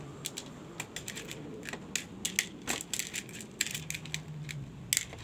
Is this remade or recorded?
recorded